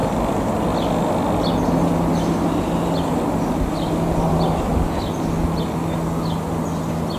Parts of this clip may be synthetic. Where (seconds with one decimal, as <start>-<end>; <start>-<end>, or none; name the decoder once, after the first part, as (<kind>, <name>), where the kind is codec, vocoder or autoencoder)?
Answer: none